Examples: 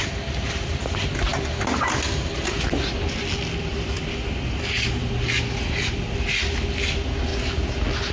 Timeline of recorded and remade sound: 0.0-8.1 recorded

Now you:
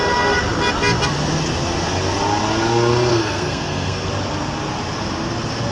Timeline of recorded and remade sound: 0.0-3.1 recorded; 3.1-4.1 remade; 4.1-5.7 recorded

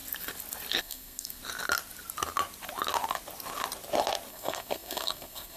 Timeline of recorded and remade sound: 0.0-0.8 recorded; 0.8-1.4 remade; 1.4-4.3 recorded; 4.3-5.6 remade

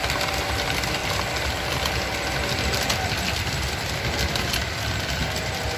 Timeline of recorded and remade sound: 0.0-5.8 recorded